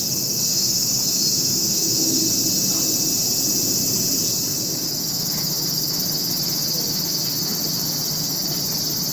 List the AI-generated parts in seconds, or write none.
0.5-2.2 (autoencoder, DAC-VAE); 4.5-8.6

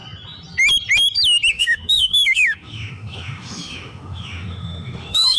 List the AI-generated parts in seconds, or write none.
1.5-5.4 (autoencoder, DAC-VAE)